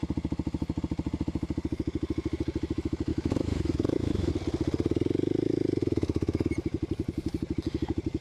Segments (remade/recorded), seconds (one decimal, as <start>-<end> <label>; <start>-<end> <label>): 0.0-3.1 recorded; 3.1-4.3 remade; 4.3-5.8 recorded; 5.8-6.5 remade; 6.5-8.2 recorded